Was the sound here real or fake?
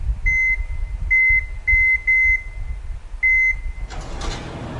real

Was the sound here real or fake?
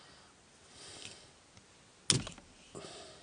real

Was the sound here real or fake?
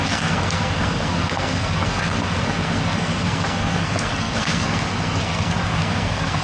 fake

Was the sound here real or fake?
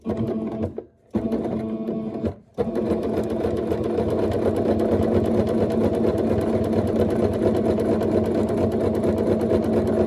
real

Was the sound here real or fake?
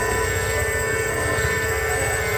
fake